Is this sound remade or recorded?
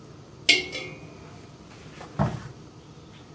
recorded